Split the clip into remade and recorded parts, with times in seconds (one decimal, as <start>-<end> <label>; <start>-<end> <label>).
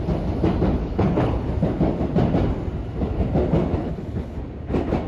0.0-0.8 recorded; 0.8-1.5 remade; 1.5-3.8 recorded; 3.8-4.4 remade; 4.4-5.1 recorded